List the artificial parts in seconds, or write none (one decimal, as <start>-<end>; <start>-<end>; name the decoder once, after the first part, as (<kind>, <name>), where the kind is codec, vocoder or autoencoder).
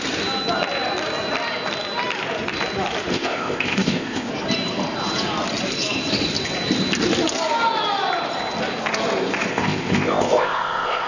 3.1-4.3 (codec, ZipCodec); 9.5-11.1